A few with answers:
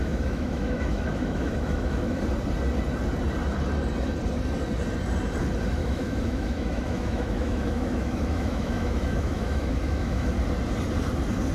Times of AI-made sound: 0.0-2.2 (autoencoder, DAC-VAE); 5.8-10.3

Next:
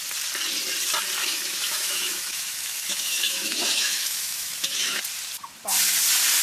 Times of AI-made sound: 1.2-5.0 (autoencoder, DAC-VAE)

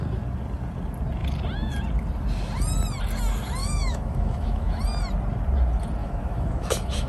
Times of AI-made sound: 3.6-4.8 (autoencoder, DAC-VAE); 6.0-7.1

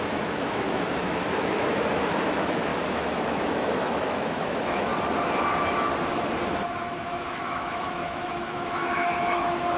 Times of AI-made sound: 0.0-2.7 (autoencoder, DAC-VAE); 3.3-4.9; 6.9-9.8

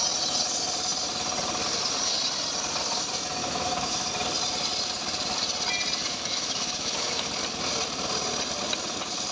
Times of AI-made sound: 3.4-4.1 (autoencoder, DAC-VAE); 6.1-7.3

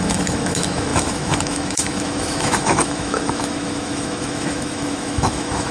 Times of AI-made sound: 0.0-5.7 (autoencoder, DAC-VAE)

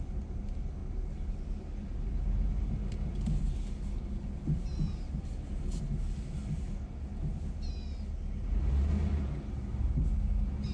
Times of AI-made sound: none

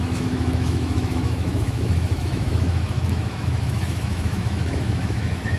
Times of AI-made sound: 0.0-5.6 (autoencoder, DAC-VAE)